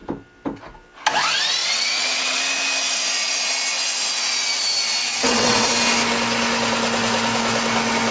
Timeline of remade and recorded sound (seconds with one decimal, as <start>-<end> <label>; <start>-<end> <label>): 0.0-1.6 recorded; 1.6-2.4 remade; 2.4-5.0 recorded; 5.0-5.7 remade; 5.7-8.1 recorded